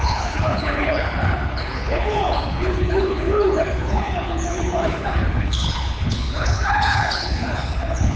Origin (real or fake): fake